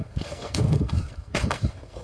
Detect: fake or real fake